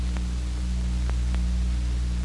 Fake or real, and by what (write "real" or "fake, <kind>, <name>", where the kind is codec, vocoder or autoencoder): real